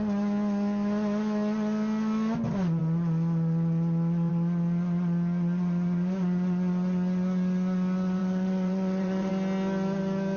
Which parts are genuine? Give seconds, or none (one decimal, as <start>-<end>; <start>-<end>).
0.0-8.2; 9.3-10.4